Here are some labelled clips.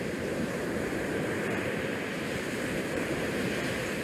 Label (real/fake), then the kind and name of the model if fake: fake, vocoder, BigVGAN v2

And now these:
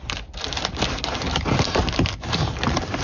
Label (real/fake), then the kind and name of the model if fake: real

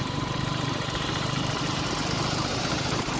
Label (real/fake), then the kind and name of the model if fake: fake, vocoder, BigVGAN v2